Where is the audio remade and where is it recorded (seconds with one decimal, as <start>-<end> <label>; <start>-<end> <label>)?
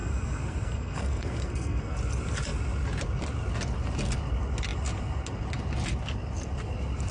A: 0.0-2.0 remade; 2.0-7.1 recorded